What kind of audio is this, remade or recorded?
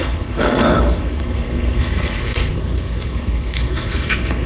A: remade